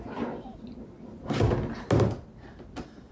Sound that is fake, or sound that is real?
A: real